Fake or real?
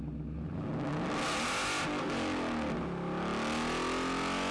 real